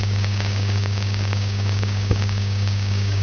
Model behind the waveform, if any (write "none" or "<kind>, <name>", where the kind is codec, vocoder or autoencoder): codec, DAC